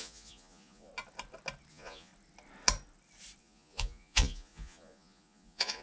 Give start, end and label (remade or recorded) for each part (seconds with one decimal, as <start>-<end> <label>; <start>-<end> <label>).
0.0-0.9 remade; 0.9-1.7 recorded; 1.7-2.1 remade; 2.1-3.4 recorded; 3.4-5.8 remade